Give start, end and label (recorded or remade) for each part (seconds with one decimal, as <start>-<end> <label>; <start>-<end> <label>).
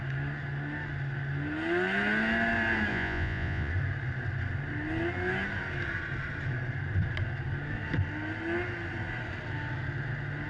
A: 0.0-2.9 recorded; 2.9-3.7 remade; 3.7-10.5 recorded